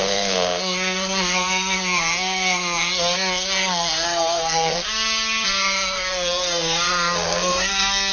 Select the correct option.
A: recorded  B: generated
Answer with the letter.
B